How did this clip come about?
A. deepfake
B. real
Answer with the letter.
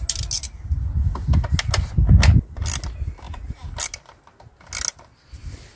B